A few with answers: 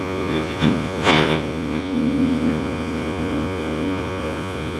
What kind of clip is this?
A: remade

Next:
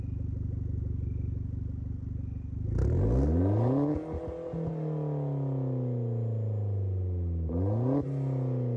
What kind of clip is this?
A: recorded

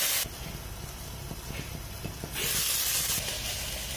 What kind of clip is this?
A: recorded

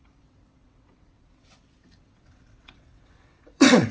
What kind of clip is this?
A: remade